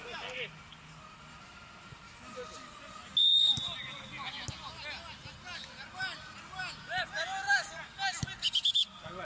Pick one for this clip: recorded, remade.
recorded